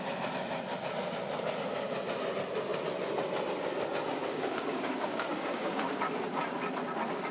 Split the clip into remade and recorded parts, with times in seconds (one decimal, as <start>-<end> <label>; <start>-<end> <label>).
0.0-4.2 recorded; 4.2-6.2 remade; 6.2-7.3 recorded